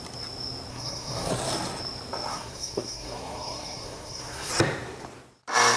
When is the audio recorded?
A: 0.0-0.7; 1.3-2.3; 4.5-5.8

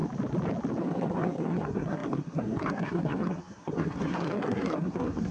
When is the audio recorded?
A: 0.0-0.8

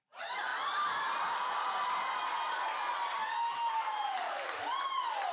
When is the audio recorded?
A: 0.0-5.3

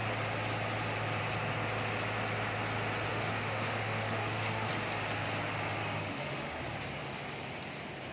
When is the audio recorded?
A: 0.0-3.1; 4.7-5.8; 6.6-8.1

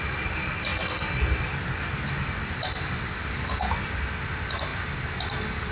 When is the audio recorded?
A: 0.0-5.7

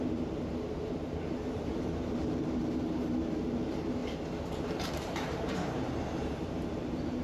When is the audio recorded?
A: 2.6-3.4; 4.0-4.5

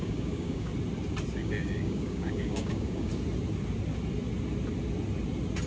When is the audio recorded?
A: 0.7-1.3; 3.1-5.7